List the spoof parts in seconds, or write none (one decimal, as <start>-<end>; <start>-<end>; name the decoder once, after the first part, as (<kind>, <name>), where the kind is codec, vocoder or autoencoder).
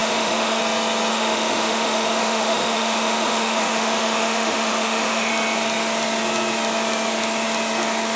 0.0-0.6 (autoencoder, DAC-VAE); 1.1-5.3